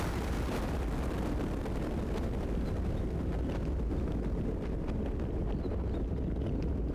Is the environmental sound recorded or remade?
recorded